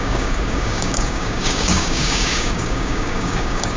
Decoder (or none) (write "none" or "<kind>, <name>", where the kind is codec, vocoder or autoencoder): codec, DAC